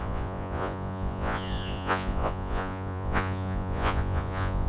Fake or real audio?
fake